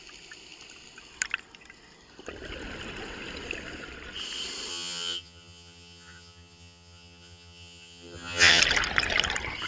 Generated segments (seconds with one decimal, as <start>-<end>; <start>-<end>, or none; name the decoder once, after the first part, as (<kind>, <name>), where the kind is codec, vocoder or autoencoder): 4.7-8.6 (vocoder, HiFi-GAN)